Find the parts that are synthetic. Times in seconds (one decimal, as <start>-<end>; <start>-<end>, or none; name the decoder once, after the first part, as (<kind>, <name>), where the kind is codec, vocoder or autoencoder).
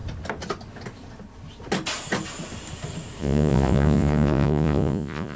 3.2-5.4 (vocoder, Vocos)